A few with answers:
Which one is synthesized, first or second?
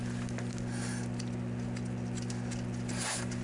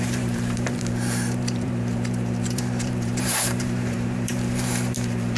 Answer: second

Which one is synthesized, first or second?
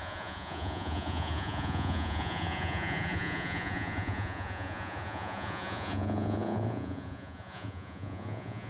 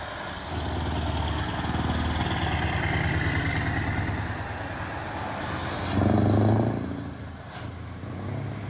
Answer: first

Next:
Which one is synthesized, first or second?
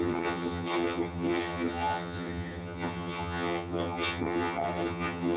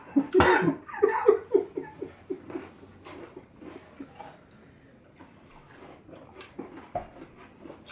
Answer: first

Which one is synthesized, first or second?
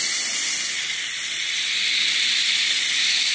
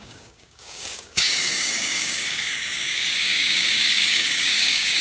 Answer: second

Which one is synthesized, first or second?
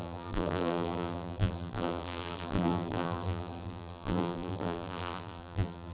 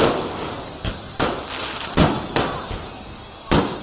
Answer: first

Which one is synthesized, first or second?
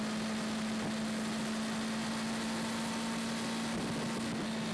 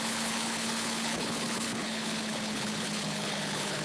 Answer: second